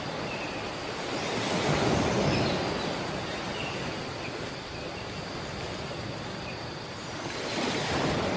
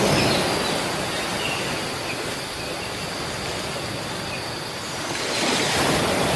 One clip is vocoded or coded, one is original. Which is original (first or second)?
second